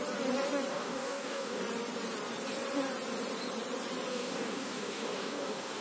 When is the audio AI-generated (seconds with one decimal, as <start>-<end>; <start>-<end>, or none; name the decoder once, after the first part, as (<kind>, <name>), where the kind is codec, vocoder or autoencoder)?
0.7-1.6 (codec, DAC); 4.1-5.8